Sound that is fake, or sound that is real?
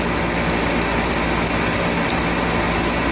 real